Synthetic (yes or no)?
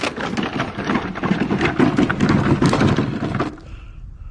no